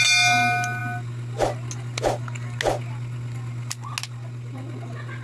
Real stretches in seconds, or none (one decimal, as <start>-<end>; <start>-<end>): 0.0-5.2